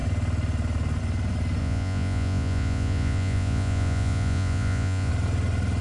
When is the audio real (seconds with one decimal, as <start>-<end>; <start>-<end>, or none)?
0.0-1.6; 5.1-5.8